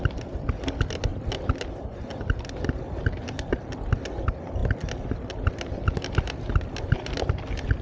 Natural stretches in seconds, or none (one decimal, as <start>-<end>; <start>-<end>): 0.0-7.8